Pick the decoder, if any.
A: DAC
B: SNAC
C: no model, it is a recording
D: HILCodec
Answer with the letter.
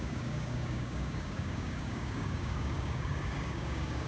A